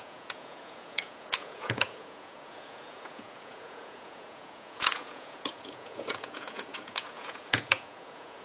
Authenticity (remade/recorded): remade